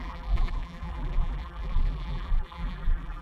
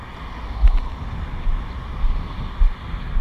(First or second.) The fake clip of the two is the first